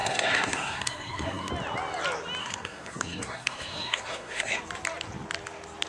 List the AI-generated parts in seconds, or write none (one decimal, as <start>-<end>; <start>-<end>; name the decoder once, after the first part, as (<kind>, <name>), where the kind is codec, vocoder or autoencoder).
0.0-1.5 (codec, SNAC); 2.4-4.6